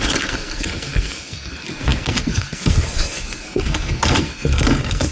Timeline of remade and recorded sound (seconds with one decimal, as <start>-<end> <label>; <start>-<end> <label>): 0.0-5.1 remade